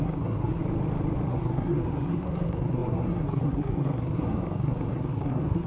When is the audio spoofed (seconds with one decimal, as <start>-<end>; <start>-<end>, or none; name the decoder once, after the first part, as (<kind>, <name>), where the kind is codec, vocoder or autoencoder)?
0.0-0.6 (codec, SNAC); 1.3-5.7